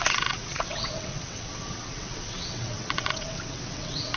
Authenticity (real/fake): fake